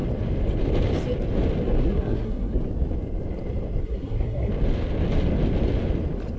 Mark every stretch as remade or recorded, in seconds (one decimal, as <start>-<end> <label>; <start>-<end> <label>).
0.0-1.8 recorded; 1.8-2.6 remade; 2.6-3.8 recorded; 3.8-4.5 remade; 4.5-6.4 recorded